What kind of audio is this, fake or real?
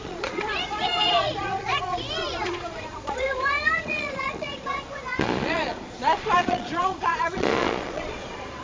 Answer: fake